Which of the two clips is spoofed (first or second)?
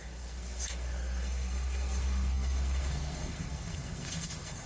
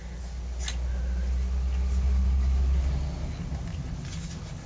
first